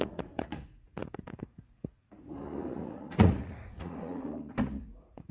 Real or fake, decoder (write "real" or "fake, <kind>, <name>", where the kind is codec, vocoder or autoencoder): fake, vocoder, Vocos